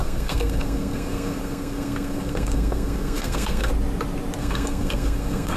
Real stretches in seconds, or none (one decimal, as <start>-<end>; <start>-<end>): 3.7-4.4